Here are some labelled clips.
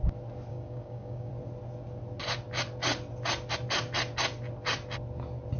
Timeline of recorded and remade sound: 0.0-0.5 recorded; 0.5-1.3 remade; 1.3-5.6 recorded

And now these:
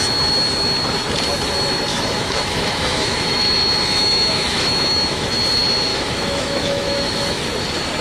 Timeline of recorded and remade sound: 0.0-1.9 recorded; 1.9-3.4 remade; 3.4-4.0 recorded; 4.0-5.3 remade; 5.3-5.9 recorded; 5.9-7.4 remade; 7.4-8.0 recorded

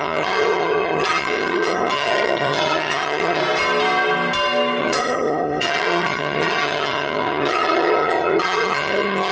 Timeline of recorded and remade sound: 0.0-3.4 remade; 3.4-4.8 recorded; 4.8-9.3 remade

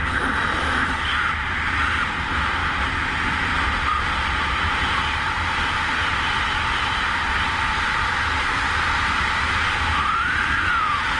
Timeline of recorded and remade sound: 0.0-11.2 recorded

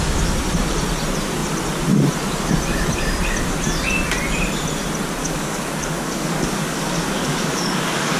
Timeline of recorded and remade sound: 0.0-5.2 recorded; 5.2-8.2 remade

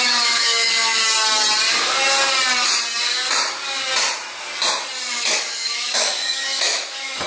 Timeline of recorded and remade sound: 0.0-1.0 remade; 1.0-5.1 recorded; 5.1-7.3 remade

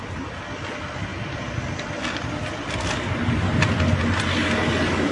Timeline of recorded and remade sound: 0.0-5.1 recorded

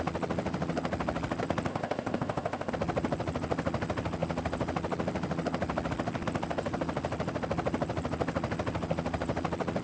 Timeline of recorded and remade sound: 0.0-1.7 recorded; 1.7-2.7 remade; 2.7-9.8 recorded